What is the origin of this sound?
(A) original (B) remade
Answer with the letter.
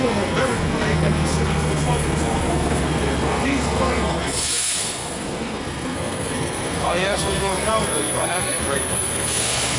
B